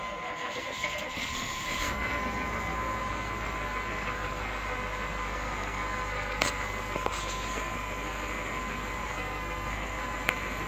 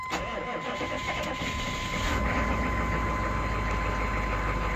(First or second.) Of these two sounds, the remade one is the first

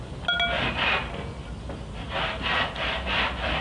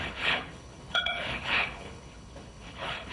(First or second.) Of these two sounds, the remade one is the second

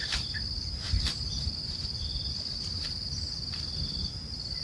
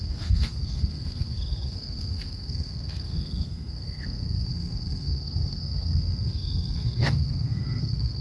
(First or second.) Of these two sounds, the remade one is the second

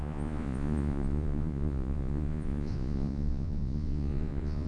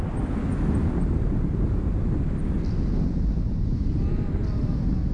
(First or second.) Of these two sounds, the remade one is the first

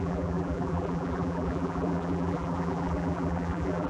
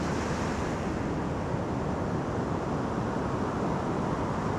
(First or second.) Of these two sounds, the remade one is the first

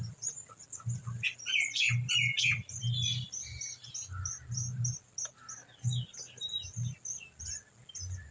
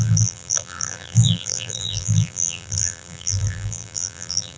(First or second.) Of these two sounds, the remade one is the second